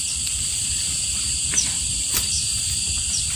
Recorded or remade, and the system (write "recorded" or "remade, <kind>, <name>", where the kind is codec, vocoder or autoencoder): remade, vocoder, BigVGAN v2